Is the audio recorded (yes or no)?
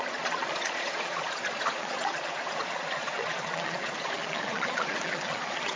no